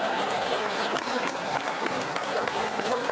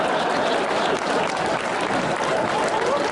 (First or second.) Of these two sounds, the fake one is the first